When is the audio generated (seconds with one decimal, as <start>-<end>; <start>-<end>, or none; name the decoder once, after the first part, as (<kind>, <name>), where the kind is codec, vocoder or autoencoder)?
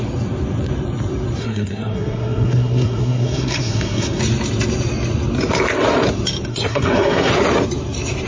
1.4-4.2 (codec, SNAC); 6.5-7.3